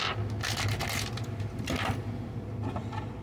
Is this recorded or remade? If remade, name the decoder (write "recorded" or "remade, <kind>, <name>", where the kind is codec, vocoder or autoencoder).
recorded